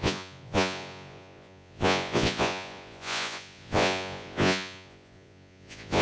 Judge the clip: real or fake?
fake